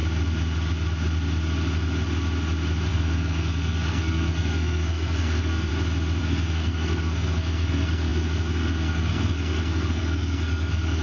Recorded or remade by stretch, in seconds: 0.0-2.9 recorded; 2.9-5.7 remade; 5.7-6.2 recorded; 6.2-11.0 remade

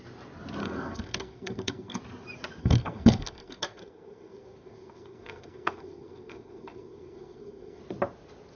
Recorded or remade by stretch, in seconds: 0.0-0.6 recorded; 0.6-2.0 remade; 2.0-2.6 recorded; 2.6-7.8 remade; 7.8-8.6 recorded